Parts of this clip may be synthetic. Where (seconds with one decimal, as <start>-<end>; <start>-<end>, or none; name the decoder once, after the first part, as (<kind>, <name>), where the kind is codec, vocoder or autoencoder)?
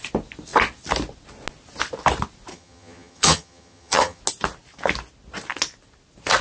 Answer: 2.5-4.2 (vocoder, HiFi-GAN)